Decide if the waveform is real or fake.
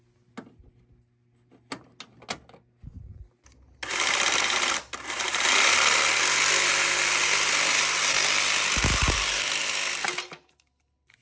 real